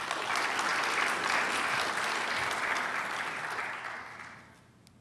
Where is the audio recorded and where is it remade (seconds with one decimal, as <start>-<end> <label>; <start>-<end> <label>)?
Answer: 0.0-5.0 recorded